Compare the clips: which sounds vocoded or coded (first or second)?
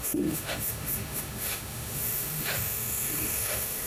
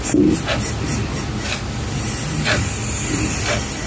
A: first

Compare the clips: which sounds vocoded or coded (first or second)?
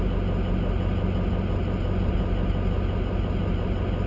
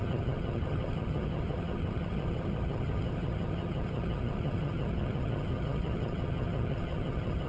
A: second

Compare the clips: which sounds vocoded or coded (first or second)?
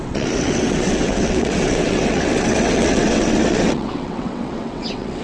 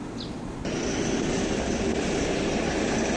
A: first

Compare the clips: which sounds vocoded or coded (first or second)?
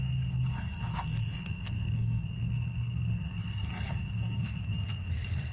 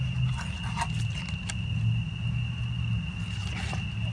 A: first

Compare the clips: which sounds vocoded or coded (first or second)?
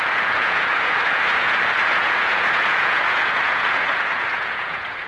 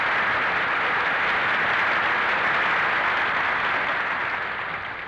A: first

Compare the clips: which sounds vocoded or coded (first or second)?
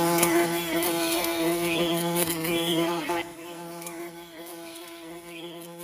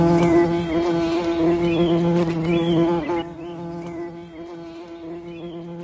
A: first